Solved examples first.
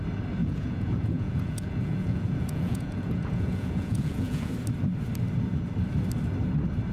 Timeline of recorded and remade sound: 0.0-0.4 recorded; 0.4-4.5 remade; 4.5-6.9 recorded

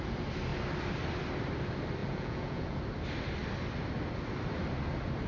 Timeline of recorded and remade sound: 0.0-2.0 recorded; 2.0-2.8 remade; 2.8-5.3 recorded

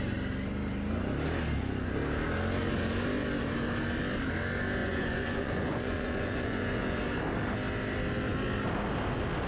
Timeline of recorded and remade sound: 0.0-4.8 recorded; 4.8-7.0 remade; 7.0-9.5 recorded

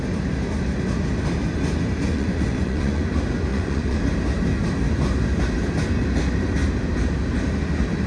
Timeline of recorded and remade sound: 0.0-2.1 recorded; 2.1-3.0 remade; 3.0-3.5 recorded; 3.5-4.0 remade; 4.0-8.1 recorded

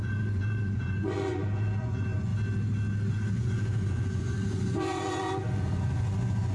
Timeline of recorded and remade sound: 0.0-2.3 remade; 2.3-3.1 recorded; 3.1-6.5 remade

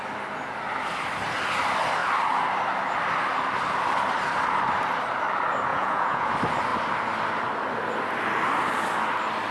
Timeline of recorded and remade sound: 0.0-5.7 recorded; 5.7-6.3 remade; 6.3-9.5 recorded